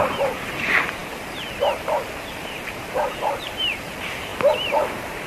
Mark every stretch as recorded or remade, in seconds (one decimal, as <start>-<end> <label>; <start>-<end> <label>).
0.0-5.3 remade